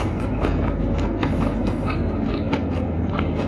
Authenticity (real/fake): fake